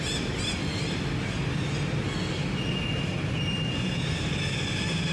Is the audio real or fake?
real